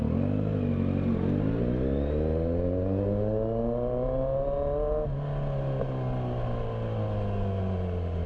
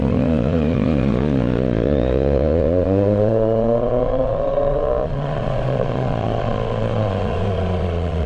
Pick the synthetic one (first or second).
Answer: second